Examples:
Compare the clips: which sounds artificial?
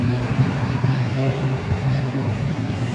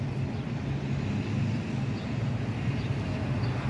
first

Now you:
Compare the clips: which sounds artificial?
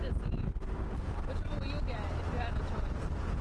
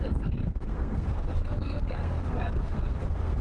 second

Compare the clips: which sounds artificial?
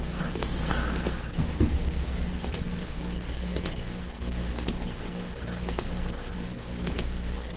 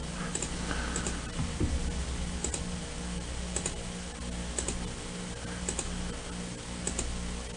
first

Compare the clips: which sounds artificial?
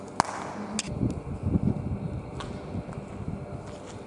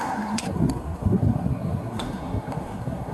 second